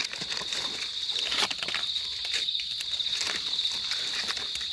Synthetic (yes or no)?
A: no